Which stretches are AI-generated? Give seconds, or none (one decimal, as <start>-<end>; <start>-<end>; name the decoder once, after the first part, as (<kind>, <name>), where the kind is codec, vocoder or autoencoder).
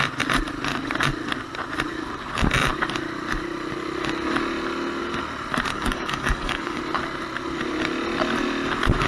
5.7-6.8 (codec, DAC)